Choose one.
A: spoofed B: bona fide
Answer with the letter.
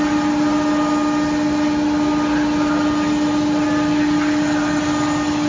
B